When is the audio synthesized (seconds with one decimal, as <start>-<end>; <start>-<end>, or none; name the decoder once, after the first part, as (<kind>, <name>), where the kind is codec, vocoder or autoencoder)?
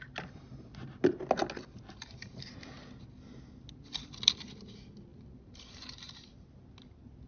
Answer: 5.1-6.5 (vocoder, BigVGAN v2)